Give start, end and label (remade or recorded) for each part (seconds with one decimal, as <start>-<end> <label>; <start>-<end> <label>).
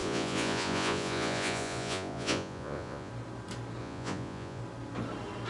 0.0-3.1 remade; 3.1-3.8 recorded; 3.8-4.6 remade; 4.6-5.5 recorded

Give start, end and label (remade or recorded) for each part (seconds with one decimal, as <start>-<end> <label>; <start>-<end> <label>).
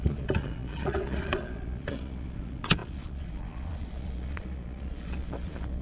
0.0-5.8 remade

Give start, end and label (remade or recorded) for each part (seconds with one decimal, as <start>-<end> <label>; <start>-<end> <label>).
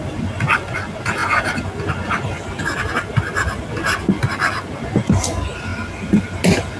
0.0-6.8 recorded